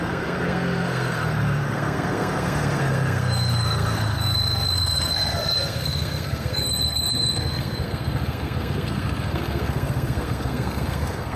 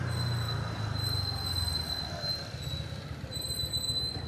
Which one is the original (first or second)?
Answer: second